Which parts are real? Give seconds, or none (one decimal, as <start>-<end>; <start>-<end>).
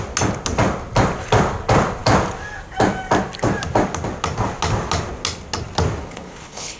0.0-6.0